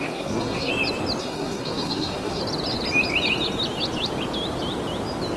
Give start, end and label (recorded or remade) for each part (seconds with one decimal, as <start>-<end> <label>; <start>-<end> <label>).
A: 0.0-0.7 remade; 0.7-1.2 recorded; 1.2-2.4 remade; 2.4-5.4 recorded